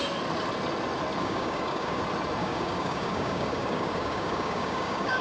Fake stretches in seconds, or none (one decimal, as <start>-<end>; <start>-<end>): 1.2-2.0; 2.4-5.2